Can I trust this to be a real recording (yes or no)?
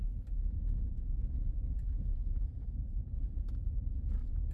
no